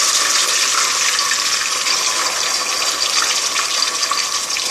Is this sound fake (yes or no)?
no